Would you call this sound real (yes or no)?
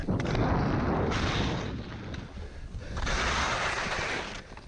yes